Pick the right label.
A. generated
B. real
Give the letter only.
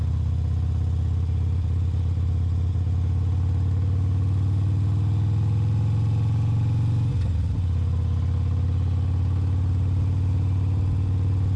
B